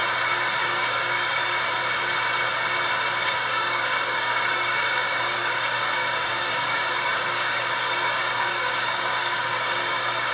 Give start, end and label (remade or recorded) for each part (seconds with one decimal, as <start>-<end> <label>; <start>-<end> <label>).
0.0-0.6 recorded; 0.6-1.8 remade; 1.8-3.2 recorded; 3.2-10.3 remade